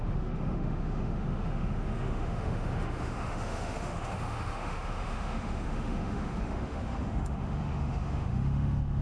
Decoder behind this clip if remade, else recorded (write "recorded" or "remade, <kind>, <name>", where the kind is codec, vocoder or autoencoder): remade, autoencoder, DAC-VAE